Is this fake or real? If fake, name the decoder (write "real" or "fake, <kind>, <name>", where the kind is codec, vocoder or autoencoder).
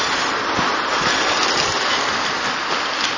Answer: real